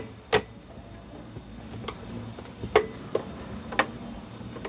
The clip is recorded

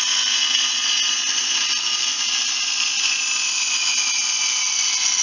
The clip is recorded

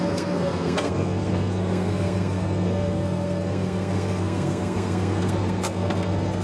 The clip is remade